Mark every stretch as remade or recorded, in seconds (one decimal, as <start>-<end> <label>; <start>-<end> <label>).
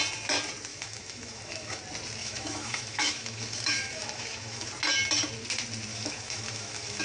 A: 0.0-0.7 recorded; 0.7-1.8 remade; 1.8-2.2 recorded; 2.2-4.7 remade; 4.7-5.9 recorded; 5.9-7.0 remade